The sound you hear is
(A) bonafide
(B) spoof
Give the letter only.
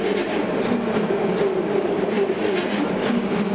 A